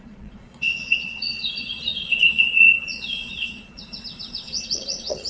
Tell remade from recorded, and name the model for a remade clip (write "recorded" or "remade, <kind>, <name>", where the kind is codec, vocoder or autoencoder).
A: remade, vocoder, Vocos